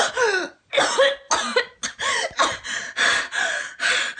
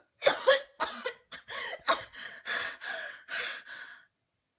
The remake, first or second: second